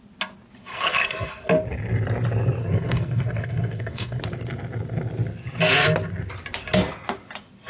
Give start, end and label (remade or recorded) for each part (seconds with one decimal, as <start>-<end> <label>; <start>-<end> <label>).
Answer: 0.0-0.7 recorded; 0.7-1.3 remade; 1.3-2.6 recorded; 2.6-4.2 remade; 4.2-7.7 recorded

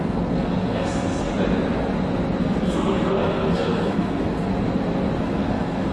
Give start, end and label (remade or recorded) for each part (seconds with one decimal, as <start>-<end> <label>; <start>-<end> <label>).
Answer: 0.0-1.3 remade; 1.3-2.4 recorded; 2.4-4.5 remade; 4.5-5.2 recorded; 5.2-5.9 remade